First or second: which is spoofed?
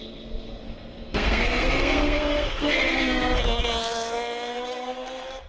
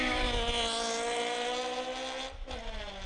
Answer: first